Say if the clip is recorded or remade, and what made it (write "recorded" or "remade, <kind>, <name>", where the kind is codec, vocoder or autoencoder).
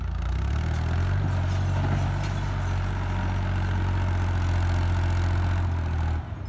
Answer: recorded